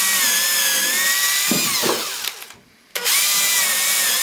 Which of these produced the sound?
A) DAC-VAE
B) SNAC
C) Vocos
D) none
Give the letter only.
D